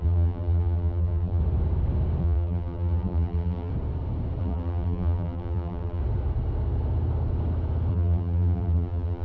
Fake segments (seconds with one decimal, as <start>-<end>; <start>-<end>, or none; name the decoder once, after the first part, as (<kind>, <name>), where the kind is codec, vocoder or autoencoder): 0.0-1.4 (vocoder, BigVGAN v2); 2.2-3.7; 4.4-6.0; 7.9-9.2